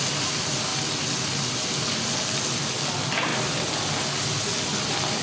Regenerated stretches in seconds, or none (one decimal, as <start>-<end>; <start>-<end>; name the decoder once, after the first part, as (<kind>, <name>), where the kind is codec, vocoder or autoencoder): none